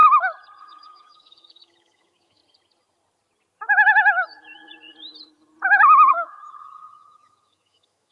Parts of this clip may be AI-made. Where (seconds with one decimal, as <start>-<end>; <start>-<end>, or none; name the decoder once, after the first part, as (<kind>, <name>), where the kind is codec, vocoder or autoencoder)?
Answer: 0.6-2.4 (autoencoder, DAC-VAE); 6.1-8.1